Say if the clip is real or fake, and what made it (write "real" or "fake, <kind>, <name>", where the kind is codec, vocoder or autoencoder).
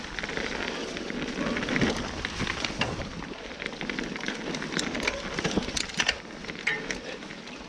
real